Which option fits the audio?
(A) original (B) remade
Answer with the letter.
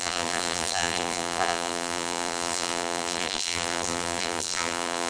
B